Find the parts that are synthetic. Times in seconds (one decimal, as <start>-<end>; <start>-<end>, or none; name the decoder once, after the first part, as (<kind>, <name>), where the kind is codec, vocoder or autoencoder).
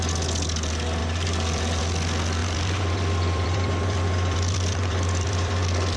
1.0-1.8 (vocoder, BigVGAN v2); 2.4-6.0